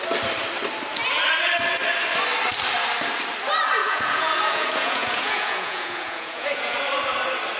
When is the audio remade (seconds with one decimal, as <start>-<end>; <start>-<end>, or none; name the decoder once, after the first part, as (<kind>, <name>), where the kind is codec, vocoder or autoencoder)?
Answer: 3.8-6.8 (vocoder, Vocos)